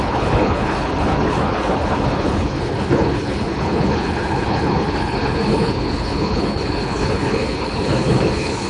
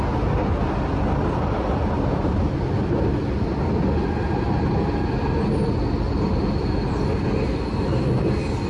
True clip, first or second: second